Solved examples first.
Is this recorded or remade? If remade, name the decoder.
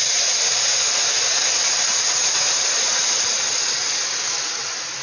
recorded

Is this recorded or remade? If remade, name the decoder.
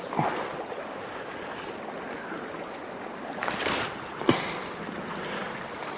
recorded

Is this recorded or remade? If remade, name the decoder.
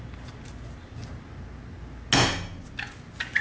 recorded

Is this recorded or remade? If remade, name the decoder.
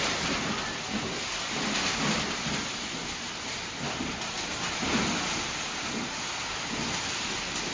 recorded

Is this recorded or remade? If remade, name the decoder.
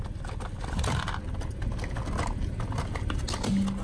recorded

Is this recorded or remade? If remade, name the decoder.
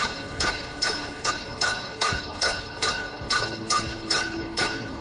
remade, codec, HILCodec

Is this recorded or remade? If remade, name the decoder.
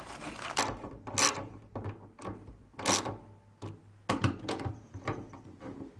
recorded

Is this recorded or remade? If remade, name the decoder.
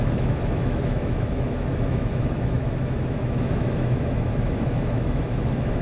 remade, autoencoder, DAC-VAE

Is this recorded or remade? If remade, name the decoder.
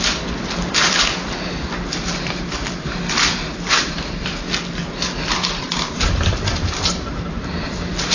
remade, vocoder, BigVGAN v2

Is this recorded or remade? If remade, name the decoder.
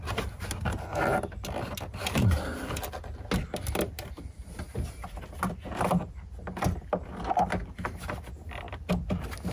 recorded